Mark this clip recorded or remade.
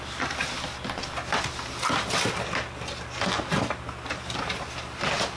recorded